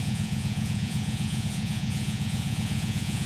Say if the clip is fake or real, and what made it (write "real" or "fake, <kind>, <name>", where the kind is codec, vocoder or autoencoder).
fake, vocoder, Vocos